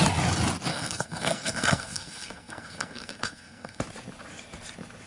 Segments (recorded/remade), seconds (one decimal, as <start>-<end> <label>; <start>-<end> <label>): 0.0-0.7 recorded; 0.7-3.8 remade; 3.8-5.1 recorded